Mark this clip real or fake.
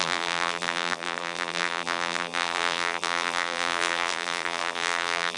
fake